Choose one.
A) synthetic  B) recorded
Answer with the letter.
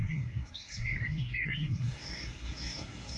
A